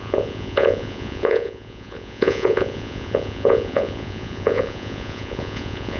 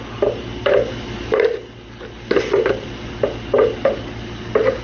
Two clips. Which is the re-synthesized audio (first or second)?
first